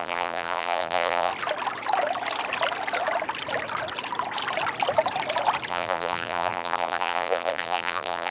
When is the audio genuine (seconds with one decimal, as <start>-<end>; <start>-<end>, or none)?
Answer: 1.3-5.7

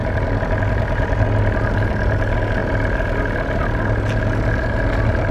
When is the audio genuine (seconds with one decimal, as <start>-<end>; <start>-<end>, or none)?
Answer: 0.0-5.3

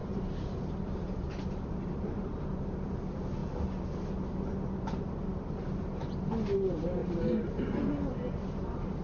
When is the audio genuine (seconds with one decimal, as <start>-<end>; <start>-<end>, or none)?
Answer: 2.3-7.0; 7.6-9.0

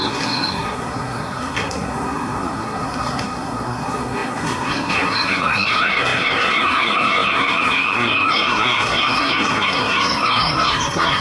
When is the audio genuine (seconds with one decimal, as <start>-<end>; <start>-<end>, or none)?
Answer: none